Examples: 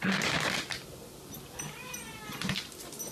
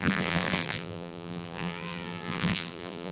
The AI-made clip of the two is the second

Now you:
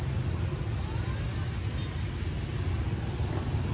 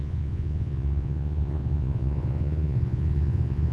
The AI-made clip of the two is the second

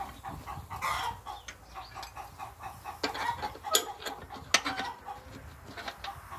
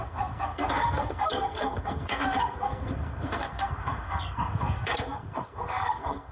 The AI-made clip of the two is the second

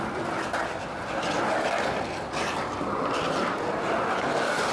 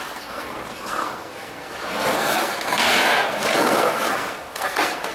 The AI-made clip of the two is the second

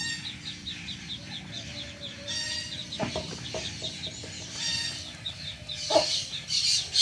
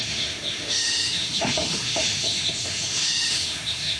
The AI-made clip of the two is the second